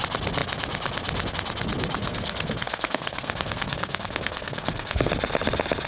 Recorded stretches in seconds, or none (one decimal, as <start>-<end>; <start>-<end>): 0.0-2.0; 5.1-5.9